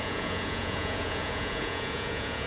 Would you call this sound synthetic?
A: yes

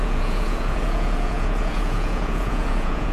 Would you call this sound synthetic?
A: yes